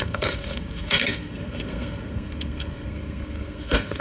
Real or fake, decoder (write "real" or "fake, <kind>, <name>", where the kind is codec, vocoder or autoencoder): fake, codec, SNAC